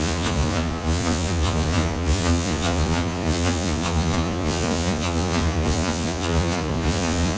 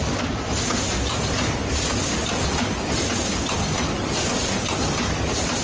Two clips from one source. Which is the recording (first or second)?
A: second